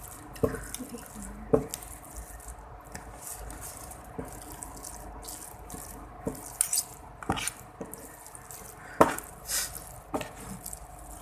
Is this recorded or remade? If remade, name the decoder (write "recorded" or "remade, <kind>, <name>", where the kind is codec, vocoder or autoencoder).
recorded